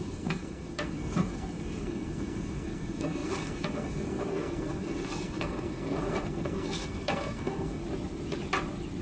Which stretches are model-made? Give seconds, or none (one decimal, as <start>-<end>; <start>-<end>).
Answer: 0.0-7.8